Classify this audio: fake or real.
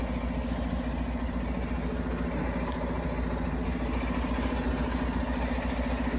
real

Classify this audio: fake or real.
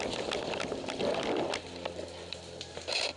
real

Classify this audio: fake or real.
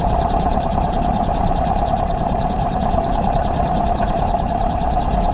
fake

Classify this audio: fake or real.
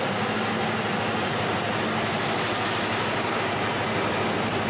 real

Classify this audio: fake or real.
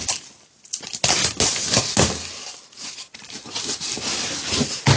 real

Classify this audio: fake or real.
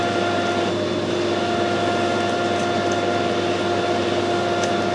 real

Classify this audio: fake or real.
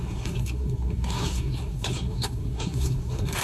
fake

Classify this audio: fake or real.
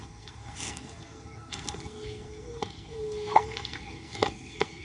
fake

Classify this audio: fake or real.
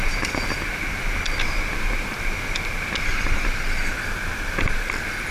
real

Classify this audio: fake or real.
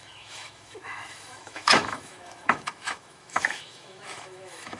fake